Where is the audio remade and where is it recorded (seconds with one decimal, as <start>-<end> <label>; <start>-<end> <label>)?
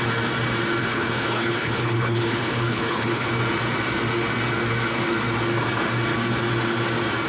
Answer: 0.0-0.8 recorded; 0.8-3.3 remade; 3.3-7.3 recorded